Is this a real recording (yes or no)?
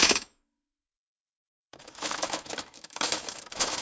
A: no